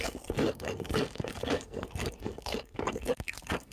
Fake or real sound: fake